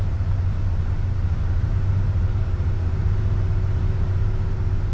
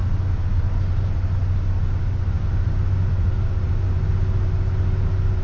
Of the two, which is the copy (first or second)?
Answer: first